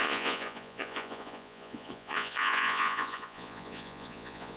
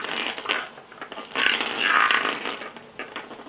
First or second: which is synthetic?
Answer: first